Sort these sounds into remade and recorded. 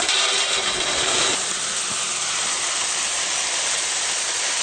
recorded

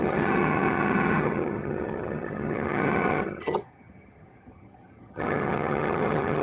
remade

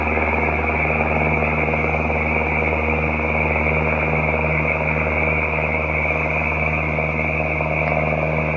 recorded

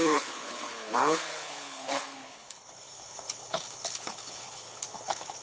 remade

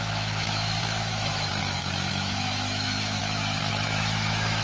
remade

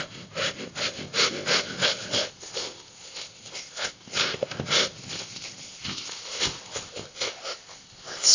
remade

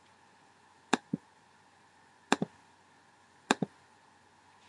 remade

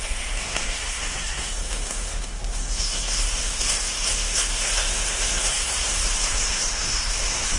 remade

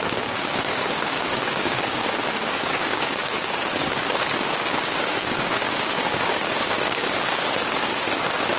remade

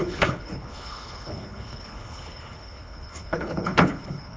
remade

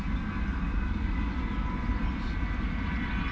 recorded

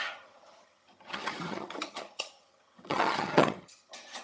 remade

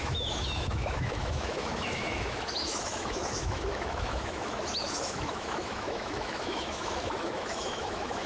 remade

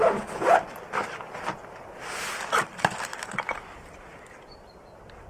recorded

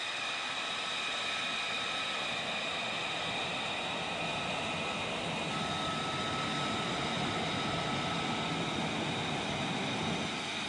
recorded